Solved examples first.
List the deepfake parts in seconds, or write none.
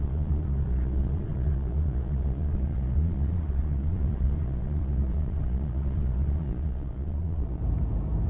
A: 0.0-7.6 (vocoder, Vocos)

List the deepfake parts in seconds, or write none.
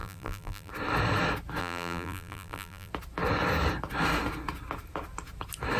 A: 0.0-0.7 (vocoder, BigVGAN v2); 1.6-2.9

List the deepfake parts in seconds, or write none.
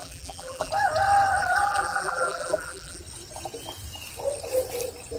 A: 0.0-0.7 (vocoder, BigVGAN v2); 1.4-3.0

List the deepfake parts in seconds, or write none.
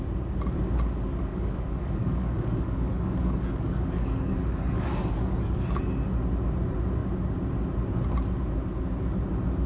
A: 1.3-5.8 (codec, DAC)